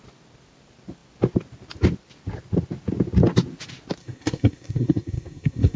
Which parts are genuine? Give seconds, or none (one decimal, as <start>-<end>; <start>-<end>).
0.0-4.0